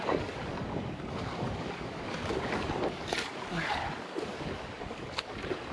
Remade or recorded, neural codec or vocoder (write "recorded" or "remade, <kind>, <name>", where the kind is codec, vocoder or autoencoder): remade, codec, DAC